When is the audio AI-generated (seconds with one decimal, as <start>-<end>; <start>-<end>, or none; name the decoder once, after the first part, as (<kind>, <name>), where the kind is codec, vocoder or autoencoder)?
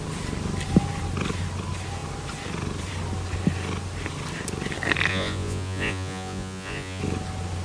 5.1-7.0 (vocoder, Vocos)